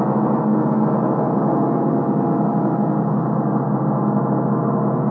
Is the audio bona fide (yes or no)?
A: yes